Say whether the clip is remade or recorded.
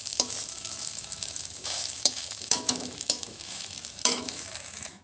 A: remade